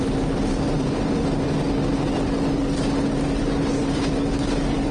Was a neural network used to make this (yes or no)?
no